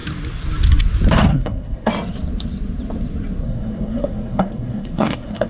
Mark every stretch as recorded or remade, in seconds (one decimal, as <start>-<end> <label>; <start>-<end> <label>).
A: 0.0-1.3 recorded; 1.3-1.9 remade; 1.9-3.4 recorded; 3.4-5.5 remade